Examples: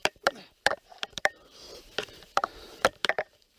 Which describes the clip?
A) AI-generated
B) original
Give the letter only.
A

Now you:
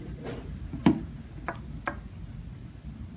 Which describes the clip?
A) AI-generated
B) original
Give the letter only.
B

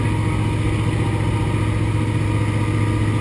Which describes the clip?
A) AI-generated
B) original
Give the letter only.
B